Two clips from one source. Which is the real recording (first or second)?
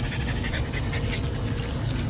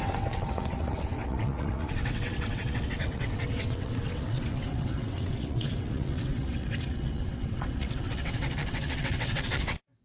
first